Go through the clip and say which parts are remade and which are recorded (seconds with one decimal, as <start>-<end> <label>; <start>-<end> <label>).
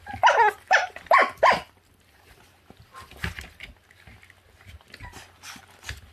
0.0-6.1 recorded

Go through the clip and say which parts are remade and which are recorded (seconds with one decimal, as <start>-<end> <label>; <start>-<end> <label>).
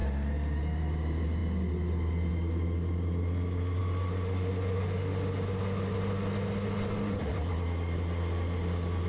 0.0-9.1 recorded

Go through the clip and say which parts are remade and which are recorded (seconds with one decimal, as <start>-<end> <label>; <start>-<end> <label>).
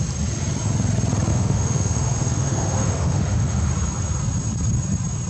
0.0-1.3 recorded; 1.3-3.7 remade; 3.7-5.3 recorded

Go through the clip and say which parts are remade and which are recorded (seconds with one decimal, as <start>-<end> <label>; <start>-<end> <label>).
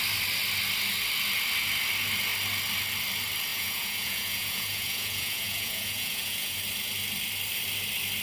0.0-3.5 recorded; 3.5-6.6 remade; 6.6-8.2 recorded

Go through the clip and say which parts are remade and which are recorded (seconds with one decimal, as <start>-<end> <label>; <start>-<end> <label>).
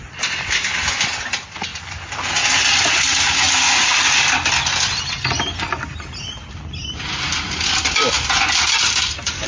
0.0-9.5 recorded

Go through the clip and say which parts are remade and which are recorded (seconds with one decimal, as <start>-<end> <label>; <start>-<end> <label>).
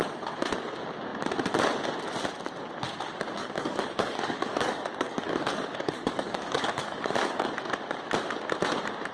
0.0-3.4 recorded; 3.4-7.5 remade; 7.5-9.1 recorded